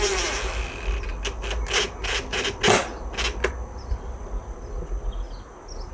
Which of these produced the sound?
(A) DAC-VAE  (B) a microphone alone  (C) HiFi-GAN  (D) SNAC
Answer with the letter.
B